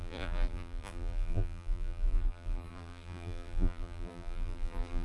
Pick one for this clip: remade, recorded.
remade